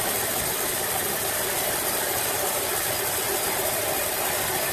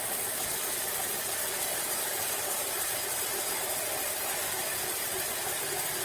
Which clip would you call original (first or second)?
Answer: second